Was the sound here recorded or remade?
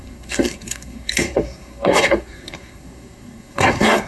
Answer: remade